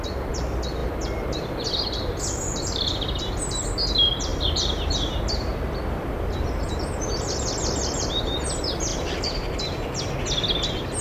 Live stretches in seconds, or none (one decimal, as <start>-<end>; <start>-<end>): 0.0-0.8; 3.5-4.3; 4.9-5.5; 6.7-8.9; 10.1-11.0